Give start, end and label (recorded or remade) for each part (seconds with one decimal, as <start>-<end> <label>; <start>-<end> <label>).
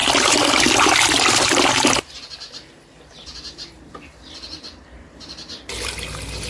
0.0-6.5 recorded